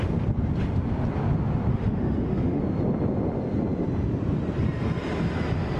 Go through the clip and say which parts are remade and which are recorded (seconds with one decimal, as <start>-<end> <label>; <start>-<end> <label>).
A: 0.0-1.7 recorded; 1.7-2.6 remade; 2.6-5.8 recorded